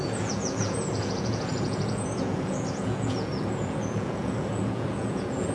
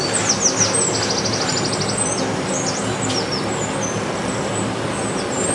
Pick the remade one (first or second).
first